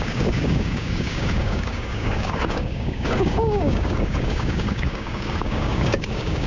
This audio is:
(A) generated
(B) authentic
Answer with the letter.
A